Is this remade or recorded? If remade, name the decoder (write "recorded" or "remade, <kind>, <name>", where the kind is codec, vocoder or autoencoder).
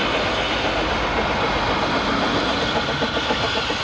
recorded